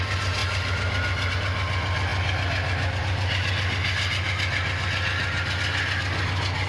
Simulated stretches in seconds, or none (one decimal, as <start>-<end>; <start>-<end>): none